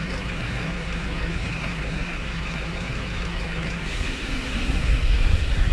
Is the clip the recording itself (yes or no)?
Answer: no